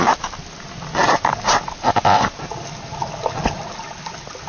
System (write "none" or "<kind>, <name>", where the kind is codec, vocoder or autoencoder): none